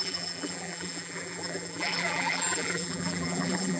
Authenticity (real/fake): fake